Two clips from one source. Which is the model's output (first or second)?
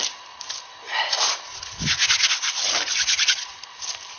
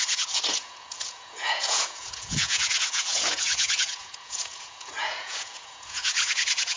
second